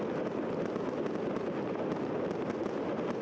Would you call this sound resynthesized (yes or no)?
no